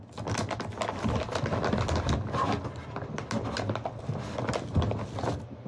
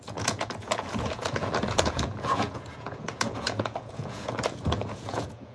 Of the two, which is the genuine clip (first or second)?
first